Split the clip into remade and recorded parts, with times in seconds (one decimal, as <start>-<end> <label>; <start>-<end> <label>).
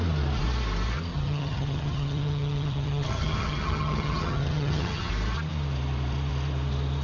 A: 0.0-1.1 recorded; 1.1-5.1 remade; 5.1-7.0 recorded